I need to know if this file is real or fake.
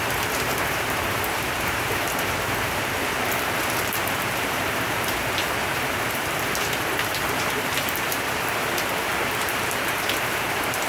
fake